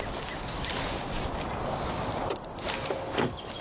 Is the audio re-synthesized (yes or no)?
no